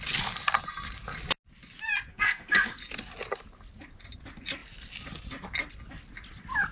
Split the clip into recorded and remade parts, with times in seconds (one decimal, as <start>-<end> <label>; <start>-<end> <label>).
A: 0.0-2.1 recorded; 2.1-2.8 remade; 2.8-6.7 recorded